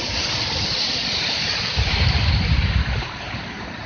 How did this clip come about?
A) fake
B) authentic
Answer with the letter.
A